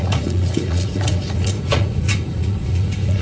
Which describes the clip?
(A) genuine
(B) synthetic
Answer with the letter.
B